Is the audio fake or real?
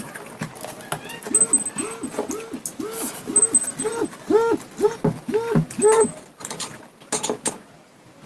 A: real